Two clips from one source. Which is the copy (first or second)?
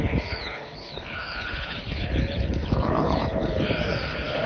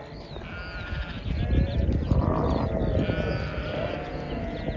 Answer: first